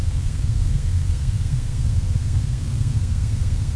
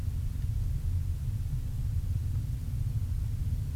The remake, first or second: first